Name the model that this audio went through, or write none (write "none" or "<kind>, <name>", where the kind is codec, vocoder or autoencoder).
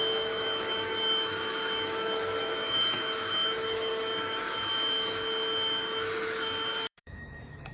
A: autoencoder, DAC-VAE